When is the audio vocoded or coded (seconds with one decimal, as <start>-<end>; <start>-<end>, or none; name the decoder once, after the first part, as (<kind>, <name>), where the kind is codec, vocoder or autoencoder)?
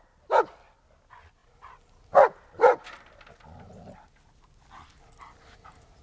none